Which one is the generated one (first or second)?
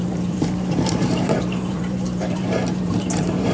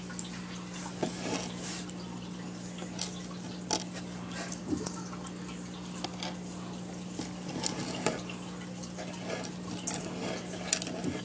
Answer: first